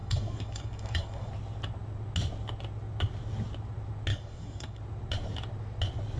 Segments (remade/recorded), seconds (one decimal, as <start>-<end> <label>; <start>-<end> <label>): 0.0-1.3 remade; 1.3-4.1 recorded; 4.1-4.8 remade; 4.8-6.2 recorded